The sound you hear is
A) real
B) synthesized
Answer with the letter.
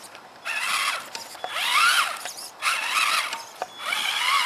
A